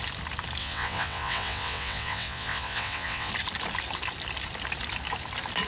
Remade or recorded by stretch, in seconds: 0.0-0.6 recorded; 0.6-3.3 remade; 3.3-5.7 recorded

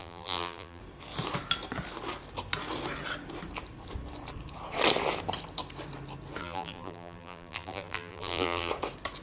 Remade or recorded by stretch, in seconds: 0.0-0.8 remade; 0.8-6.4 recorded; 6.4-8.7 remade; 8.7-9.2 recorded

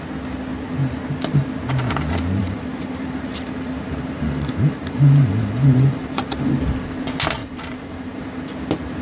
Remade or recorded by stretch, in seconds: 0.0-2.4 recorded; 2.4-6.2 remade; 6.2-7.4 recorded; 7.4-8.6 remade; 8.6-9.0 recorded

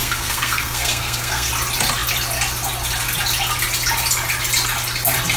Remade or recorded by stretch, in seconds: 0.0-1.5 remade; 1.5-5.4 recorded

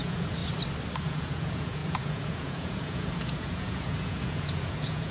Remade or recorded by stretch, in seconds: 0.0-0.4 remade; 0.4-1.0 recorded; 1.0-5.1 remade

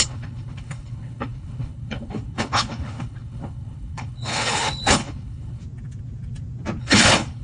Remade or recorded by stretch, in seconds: 0.0-5.6 remade; 5.6-6.8 recorded; 6.8-7.4 remade

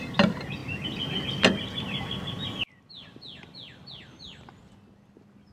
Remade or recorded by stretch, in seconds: 0.0-5.5 recorded